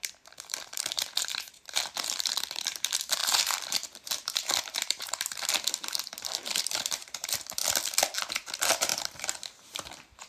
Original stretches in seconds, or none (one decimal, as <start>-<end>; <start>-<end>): 7.6-8.3